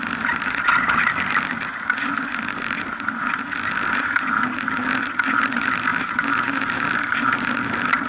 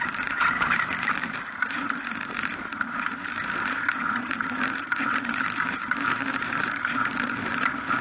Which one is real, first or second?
first